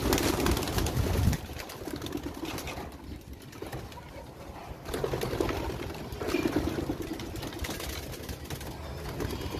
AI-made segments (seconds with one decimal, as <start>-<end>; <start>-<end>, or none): none